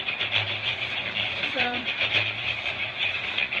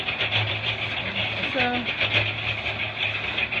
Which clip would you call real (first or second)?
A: second